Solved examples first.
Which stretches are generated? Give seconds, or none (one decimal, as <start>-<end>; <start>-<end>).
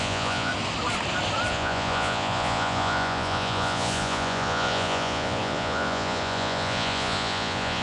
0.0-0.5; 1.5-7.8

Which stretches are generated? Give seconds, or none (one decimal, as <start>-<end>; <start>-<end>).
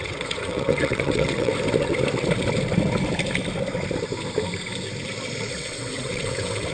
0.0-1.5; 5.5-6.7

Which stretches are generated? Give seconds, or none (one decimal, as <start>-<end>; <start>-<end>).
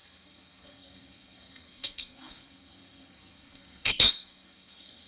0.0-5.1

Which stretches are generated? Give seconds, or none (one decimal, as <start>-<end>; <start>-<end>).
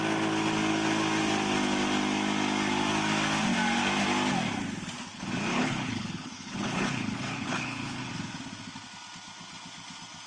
5.5-8.1